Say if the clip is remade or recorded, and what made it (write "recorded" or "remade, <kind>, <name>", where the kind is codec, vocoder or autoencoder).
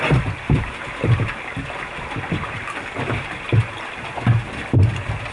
recorded